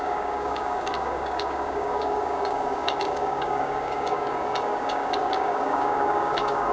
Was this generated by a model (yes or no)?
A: yes